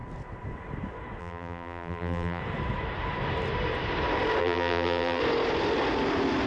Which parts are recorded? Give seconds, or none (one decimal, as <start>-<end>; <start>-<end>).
0.0-1.2; 2.4-4.4; 5.2-6.5